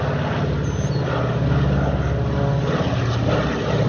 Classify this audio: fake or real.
real